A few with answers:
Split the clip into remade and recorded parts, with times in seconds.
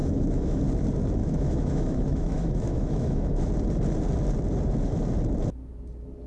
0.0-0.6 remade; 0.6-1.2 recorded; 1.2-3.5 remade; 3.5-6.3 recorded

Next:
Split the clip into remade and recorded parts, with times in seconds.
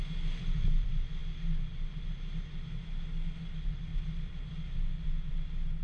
0.0-5.8 recorded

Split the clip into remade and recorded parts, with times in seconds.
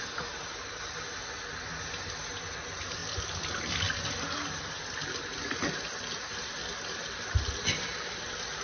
0.0-8.6 recorded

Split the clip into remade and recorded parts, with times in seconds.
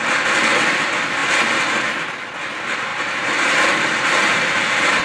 0.0-2.9 recorded; 2.9-5.0 remade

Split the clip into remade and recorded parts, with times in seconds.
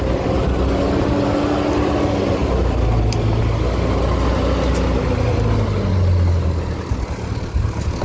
0.0-8.0 recorded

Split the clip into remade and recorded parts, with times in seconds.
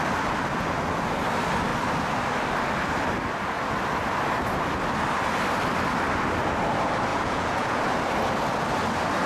0.0-7.1 recorded; 7.1-7.8 remade; 7.8-9.3 recorded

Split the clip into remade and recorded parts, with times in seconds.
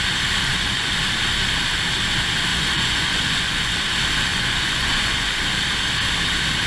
0.0-0.4 recorded; 0.4-1.0 remade; 1.0-2.5 recorded; 2.5-3.8 remade; 3.8-4.3 recorded; 4.3-5.4 remade; 5.4-6.7 recorded